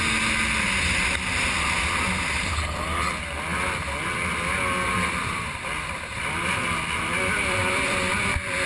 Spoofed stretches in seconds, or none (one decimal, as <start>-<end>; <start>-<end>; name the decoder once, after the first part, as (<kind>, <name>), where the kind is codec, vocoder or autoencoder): 5.2-8.7 (vocoder, BigVGAN v2)